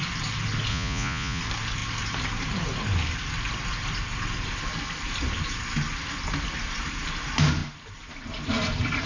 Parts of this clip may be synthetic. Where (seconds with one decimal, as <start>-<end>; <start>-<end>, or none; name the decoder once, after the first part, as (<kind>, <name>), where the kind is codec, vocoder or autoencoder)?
0.7-1.4 (vocoder, Vocos)